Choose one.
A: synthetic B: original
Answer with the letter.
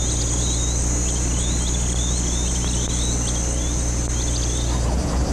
B